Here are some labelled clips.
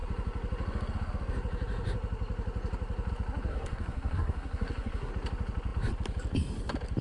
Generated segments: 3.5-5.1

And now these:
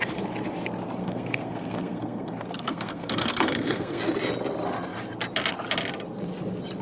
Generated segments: 1.0-4.0